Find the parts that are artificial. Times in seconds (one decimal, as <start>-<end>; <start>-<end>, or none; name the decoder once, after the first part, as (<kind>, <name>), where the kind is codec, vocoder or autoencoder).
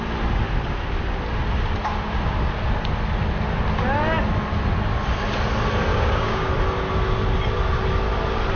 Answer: 5.9-6.5 (codec, DAC)